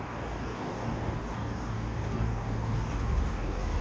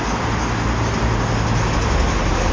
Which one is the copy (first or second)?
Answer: first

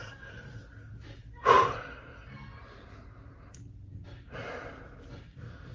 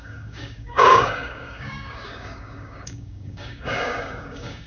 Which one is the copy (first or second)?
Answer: second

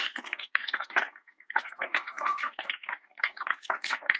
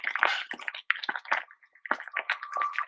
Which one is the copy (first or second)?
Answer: first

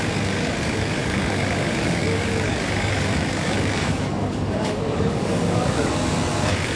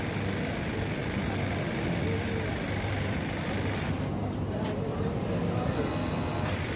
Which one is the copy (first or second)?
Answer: first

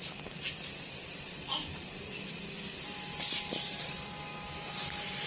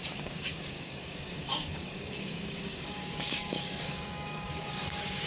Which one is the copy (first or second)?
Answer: second